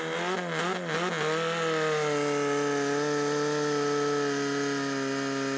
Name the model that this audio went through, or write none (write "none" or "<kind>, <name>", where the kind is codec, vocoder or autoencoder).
none